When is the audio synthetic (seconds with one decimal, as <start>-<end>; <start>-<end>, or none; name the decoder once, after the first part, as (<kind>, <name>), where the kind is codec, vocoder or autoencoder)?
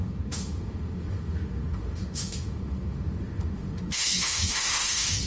0.0-5.3 (autoencoder, DAC-VAE)